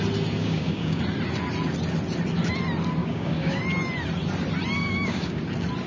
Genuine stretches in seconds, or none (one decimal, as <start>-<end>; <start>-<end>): 0.0-0.4; 1.0-3.0; 3.6-4.8; 5.4-5.9